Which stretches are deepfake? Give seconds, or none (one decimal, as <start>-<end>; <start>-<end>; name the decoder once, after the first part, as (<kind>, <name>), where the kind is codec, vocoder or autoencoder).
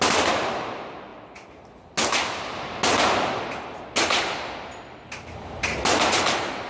none